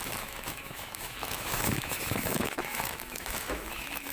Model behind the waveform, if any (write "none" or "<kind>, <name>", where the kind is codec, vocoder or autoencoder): autoencoder, DAC-VAE